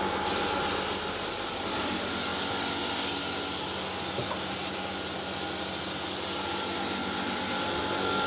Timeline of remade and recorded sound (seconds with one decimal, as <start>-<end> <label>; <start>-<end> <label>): 0.0-8.3 recorded